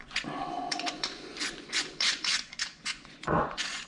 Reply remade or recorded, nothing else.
remade